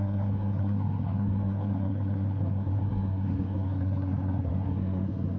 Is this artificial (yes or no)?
yes